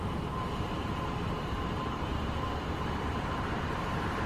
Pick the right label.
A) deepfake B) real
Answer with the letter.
A